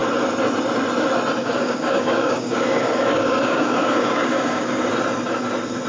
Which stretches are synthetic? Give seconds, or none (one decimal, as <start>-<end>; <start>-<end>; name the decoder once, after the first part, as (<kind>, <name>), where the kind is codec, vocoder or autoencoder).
1.4-4.9 (codec, DAC)